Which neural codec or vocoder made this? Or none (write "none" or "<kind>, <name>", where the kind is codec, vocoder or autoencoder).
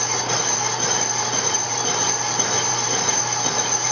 none